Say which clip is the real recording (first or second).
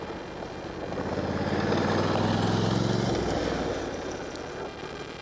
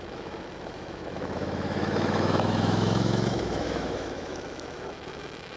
first